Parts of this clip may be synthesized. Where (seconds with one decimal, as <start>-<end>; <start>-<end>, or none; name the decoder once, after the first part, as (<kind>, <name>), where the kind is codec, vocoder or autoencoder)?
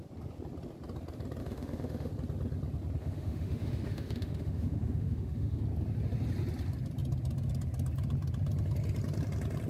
1.4-2.1 (autoencoder, DAC-VAE); 3.0-5.6